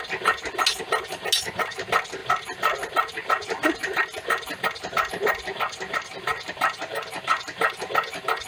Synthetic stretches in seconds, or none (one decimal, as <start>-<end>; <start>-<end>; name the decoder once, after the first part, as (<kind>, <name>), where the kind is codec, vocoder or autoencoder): none